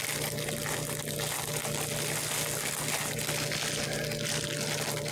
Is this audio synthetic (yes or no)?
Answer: no